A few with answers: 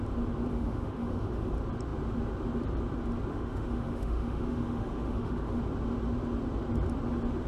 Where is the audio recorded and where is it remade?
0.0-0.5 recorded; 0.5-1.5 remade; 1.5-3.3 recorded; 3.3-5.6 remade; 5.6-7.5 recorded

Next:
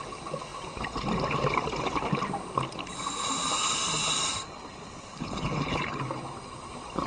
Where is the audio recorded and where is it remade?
0.0-5.1 recorded; 5.1-6.0 remade; 6.0-7.1 recorded

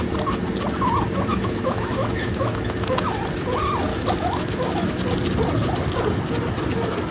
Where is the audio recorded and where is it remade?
0.0-1.3 recorded; 1.3-3.1 remade; 3.1-3.9 recorded; 3.9-5.0 remade; 5.0-7.1 recorded

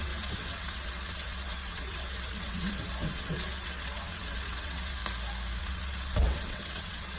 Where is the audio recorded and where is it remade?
0.0-5.0 remade; 5.0-5.6 recorded; 5.6-7.2 remade

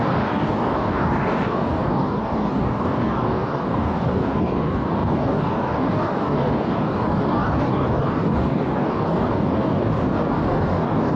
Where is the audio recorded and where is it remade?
0.0-11.2 remade

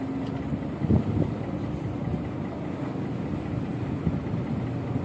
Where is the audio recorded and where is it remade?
0.0-5.0 recorded